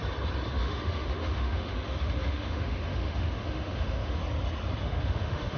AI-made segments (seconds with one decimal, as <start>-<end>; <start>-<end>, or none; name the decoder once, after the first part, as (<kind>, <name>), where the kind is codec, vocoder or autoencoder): 0.5-4.2 (autoencoder, DAC-VAE); 4.8-5.6